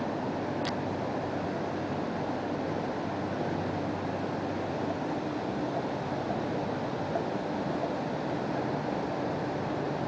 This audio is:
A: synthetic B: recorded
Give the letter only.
B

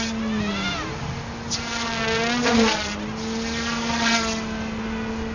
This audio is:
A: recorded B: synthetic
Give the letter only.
A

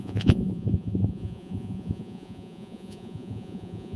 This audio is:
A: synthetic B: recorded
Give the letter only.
A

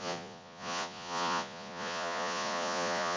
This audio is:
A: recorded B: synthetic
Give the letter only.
B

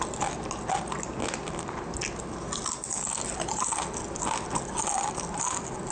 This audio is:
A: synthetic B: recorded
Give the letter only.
B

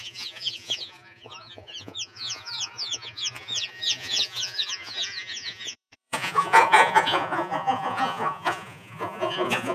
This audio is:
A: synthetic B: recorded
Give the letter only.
A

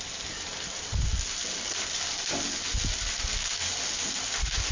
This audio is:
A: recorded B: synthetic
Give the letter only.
A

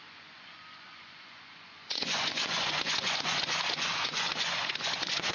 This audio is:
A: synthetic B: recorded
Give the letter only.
A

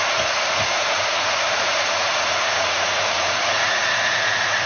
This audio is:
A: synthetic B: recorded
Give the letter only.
A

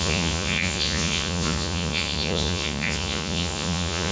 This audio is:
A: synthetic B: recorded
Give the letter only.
A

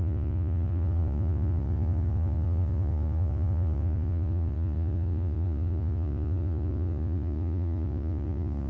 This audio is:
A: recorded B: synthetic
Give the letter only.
B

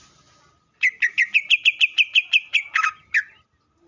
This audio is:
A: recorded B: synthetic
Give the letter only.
A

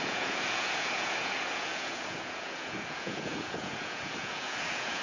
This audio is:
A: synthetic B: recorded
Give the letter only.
A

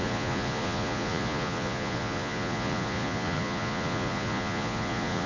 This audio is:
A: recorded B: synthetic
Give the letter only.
B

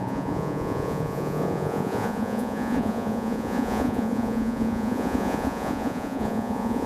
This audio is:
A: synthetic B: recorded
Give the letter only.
A